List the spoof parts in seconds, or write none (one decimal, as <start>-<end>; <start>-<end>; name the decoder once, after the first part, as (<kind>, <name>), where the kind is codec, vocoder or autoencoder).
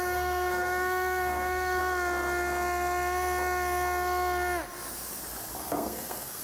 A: 0.0-1.8 (codec, SNAC); 5.6-6.4